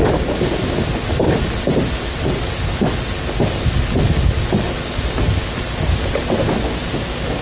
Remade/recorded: recorded